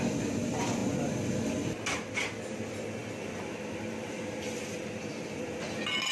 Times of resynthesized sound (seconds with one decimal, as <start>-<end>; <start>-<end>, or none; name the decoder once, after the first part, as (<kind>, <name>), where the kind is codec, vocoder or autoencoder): none